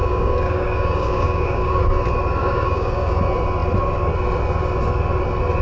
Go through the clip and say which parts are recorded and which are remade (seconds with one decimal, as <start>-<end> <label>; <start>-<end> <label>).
0.0-1.8 remade; 1.8-2.4 recorded; 2.4-3.2 remade; 3.2-5.6 recorded